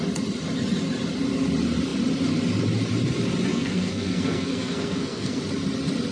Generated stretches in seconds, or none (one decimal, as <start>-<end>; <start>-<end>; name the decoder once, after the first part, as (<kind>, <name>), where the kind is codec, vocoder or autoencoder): 3.5-5.4 (codec, SNAC)